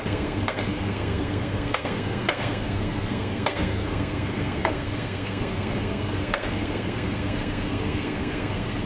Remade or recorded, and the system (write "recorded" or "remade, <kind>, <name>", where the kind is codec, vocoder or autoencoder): remade, codec, SNAC